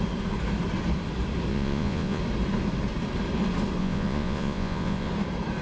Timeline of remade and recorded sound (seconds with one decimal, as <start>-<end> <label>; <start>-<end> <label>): 0.0-1.5 recorded; 1.5-2.2 remade; 2.2-3.8 recorded; 3.8-5.1 remade; 5.1-5.6 recorded